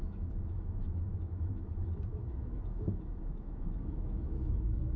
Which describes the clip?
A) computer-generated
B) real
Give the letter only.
A